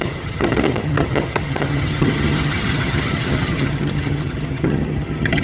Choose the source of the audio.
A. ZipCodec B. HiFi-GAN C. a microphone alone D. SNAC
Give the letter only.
B